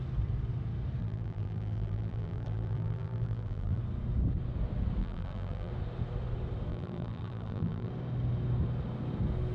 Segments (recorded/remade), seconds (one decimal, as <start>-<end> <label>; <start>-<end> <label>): 0.0-1.0 recorded; 1.0-3.8 remade; 3.8-5.0 recorded; 5.0-5.7 remade; 5.7-6.7 recorded; 6.7-7.9 remade; 7.9-9.5 recorded